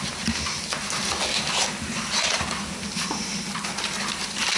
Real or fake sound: real